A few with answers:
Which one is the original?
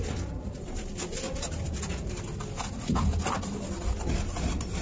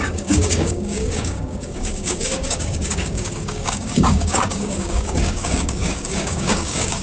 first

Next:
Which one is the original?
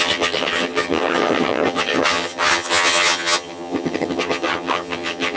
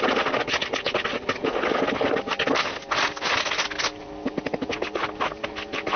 second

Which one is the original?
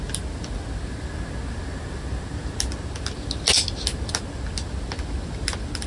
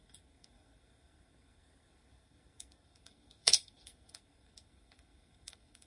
first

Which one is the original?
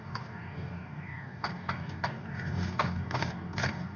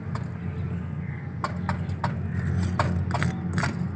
second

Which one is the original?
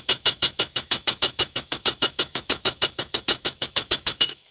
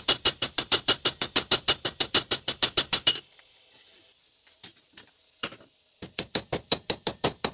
second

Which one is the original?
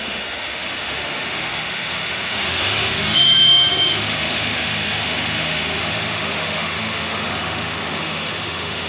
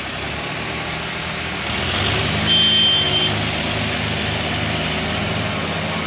second